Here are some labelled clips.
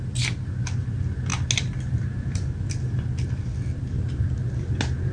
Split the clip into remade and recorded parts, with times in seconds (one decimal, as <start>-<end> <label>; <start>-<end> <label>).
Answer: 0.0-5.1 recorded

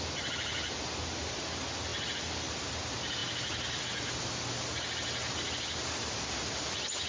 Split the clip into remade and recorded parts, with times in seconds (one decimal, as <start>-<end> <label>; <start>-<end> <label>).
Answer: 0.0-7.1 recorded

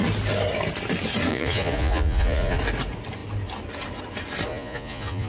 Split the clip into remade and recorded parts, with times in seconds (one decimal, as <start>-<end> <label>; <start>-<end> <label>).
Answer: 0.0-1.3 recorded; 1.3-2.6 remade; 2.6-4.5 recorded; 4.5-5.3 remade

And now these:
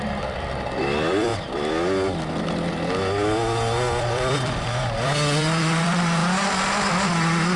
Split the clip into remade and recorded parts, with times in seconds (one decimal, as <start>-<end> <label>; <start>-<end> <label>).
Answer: 0.0-1.3 remade; 1.3-4.0 recorded; 4.0-6.2 remade; 6.2-6.9 recorded; 6.9-7.6 remade

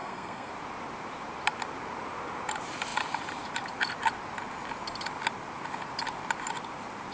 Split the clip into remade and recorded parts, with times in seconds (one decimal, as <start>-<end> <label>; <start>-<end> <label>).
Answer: 0.0-0.5 remade; 0.5-7.1 recorded

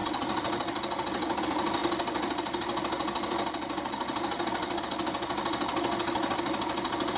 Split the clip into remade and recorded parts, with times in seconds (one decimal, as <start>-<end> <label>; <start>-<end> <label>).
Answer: 0.0-7.2 recorded

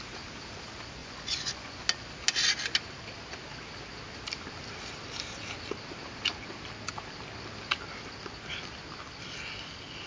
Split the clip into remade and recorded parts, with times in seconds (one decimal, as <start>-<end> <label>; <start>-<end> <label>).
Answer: 0.0-1.0 recorded; 1.0-1.8 remade; 1.8-10.1 recorded